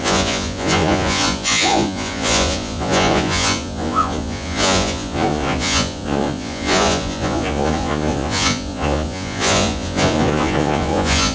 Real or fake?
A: fake